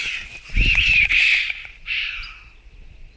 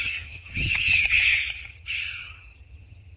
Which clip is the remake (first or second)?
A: second